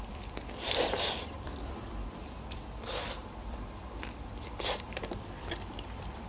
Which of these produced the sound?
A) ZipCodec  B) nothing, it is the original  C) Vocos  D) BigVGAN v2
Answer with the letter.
D